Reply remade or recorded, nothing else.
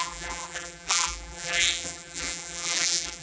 remade